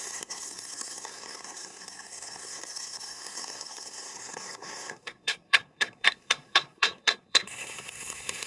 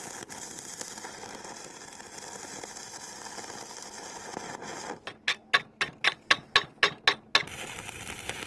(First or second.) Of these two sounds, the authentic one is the second